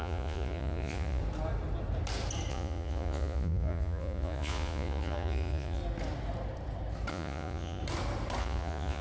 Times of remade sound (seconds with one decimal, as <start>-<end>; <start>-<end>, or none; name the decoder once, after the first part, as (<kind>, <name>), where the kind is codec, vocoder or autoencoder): 0.0-1.2 (vocoder, Vocos); 2.5-5.8; 7.1-7.8; 8.4-9.0